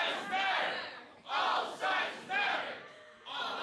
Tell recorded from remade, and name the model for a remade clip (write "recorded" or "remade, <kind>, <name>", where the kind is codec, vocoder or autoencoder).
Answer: recorded